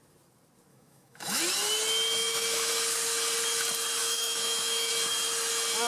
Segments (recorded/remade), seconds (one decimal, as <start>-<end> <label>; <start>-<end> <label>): 0.0-0.7 recorded; 0.7-1.4 remade; 1.4-2.2 recorded; 2.2-2.7 remade; 2.7-4.0 recorded; 4.0-4.9 remade; 4.9-5.9 recorded